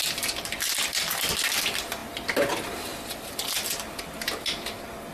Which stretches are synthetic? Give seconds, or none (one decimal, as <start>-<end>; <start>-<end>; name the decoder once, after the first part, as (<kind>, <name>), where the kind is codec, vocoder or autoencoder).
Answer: none